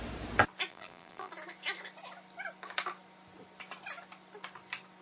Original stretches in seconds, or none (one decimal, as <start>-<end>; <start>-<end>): 0.0-0.7; 1.3-5.0

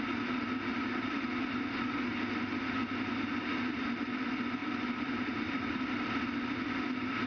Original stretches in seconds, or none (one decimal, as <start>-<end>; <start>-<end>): 0.0-0.7; 1.3-4.6; 6.2-7.3